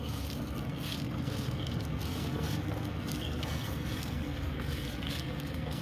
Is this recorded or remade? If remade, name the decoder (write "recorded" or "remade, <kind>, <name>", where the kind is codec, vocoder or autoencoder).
remade, codec, SNAC